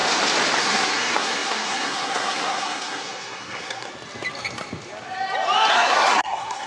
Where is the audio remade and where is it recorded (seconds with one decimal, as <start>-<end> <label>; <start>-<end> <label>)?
0.0-0.6 recorded; 0.6-3.9 remade; 3.9-5.7 recorded; 5.7-6.7 remade